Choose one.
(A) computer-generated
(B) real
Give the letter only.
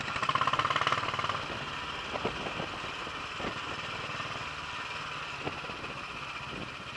B